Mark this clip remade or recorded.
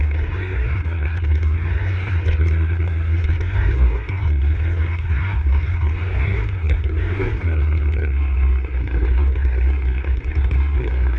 remade